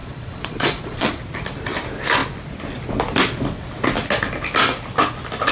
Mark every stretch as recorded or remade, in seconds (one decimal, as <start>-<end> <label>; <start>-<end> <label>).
0.0-1.2 remade; 1.2-5.5 recorded